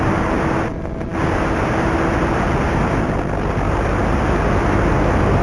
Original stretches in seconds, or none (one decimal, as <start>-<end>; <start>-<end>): 0.0-5.4